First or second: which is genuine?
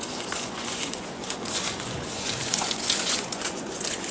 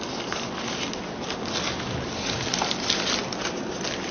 second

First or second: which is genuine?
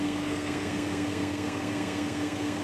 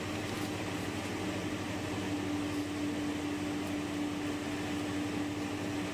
second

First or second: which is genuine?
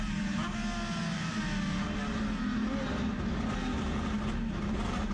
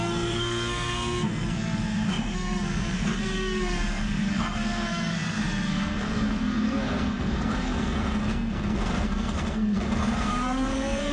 first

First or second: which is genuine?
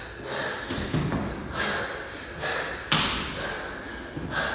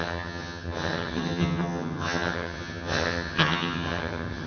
first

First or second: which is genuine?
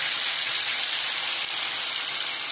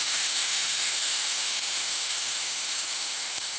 first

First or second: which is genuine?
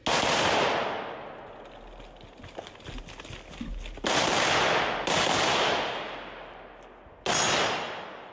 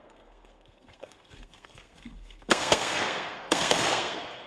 first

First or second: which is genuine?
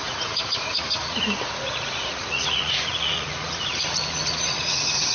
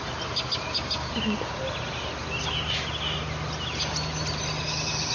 second